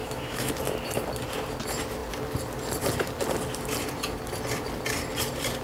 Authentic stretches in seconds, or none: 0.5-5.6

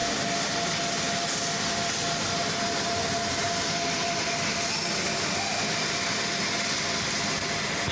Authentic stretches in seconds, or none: 0.0-7.9

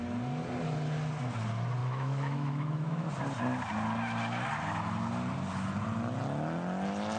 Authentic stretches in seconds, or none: 0.0-1.8; 3.1-7.2

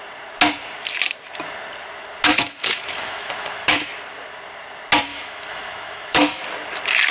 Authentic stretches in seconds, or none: 0.0-2.3; 3.9-5.1; 6.4-7.1

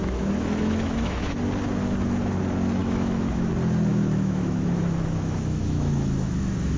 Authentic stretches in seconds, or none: 1.4-2.8; 3.5-3.9

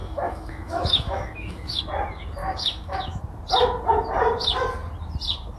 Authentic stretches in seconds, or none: 1.8-2.4; 3.2-5.6

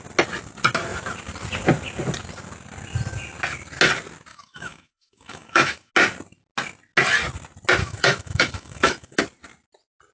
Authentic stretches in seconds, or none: 0.0-4.3; 5.9-7.8; 9.2-10.1

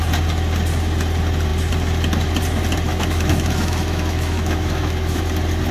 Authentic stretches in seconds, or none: 0.0-2.9; 5.2-5.7